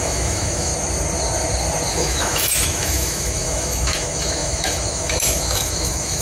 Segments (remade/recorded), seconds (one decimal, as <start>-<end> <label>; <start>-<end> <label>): 0.0-0.7 remade; 0.7-1.9 recorded; 1.9-6.2 remade